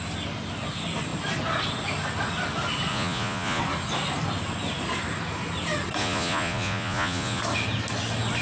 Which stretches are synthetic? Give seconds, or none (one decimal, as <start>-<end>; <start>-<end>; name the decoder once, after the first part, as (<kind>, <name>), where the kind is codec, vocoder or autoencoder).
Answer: 2.9-3.6 (vocoder, Vocos); 6.0-7.4